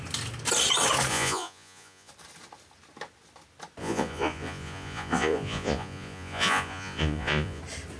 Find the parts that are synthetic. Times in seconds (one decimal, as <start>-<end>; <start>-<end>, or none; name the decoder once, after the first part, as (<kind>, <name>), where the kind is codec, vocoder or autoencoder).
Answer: 1.1-2.1 (vocoder, Vocos); 3.8-7.6